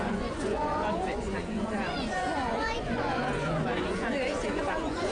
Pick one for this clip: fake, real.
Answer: fake